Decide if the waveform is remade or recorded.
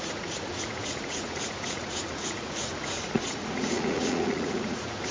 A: remade